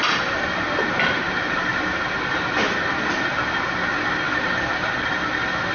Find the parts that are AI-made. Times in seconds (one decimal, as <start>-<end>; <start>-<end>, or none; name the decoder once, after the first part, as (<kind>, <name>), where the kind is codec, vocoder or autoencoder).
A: none